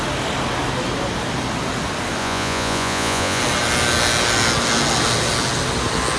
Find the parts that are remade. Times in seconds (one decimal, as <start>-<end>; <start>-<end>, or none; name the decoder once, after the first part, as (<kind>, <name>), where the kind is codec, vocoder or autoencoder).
2.2-3.4 (vocoder, Vocos)